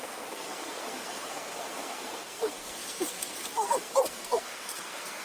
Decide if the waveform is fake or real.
fake